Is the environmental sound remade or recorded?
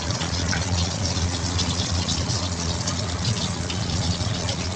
remade